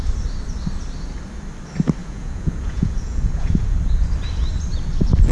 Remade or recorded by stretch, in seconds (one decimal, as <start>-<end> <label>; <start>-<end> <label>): 0.0-2.0 recorded; 2.0-3.6 remade; 3.6-5.3 recorded